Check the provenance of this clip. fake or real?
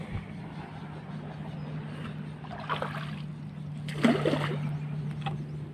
fake